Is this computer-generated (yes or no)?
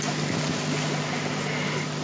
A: no